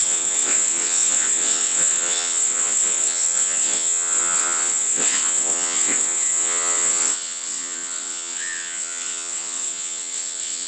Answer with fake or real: fake